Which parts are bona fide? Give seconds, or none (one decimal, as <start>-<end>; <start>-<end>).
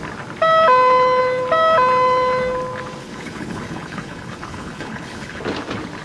0.0-3.0; 5.4-6.0